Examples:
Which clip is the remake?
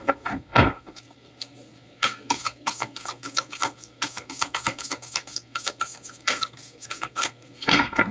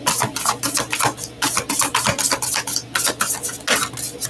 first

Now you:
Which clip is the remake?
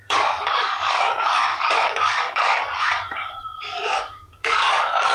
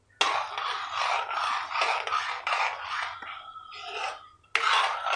first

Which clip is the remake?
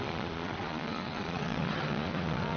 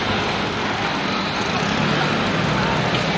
first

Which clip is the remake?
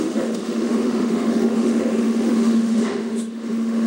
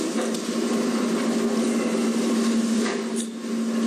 first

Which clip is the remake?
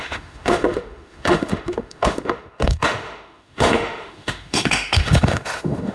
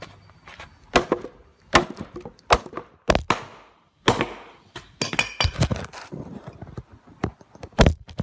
first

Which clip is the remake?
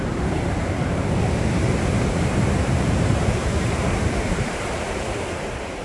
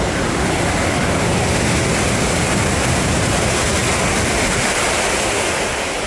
first